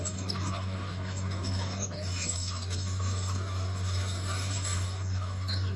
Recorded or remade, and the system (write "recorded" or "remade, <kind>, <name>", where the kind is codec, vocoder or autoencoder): remade, codec, DAC